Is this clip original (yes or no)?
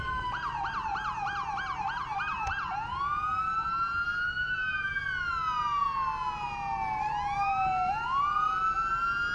yes